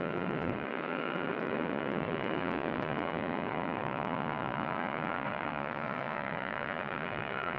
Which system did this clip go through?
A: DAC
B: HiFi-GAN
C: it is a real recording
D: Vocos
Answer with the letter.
D